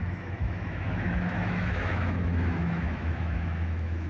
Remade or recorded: remade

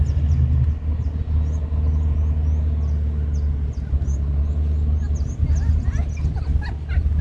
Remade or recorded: recorded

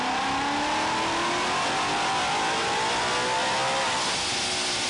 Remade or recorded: recorded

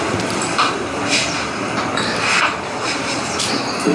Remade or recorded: recorded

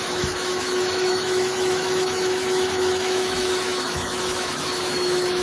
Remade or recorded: remade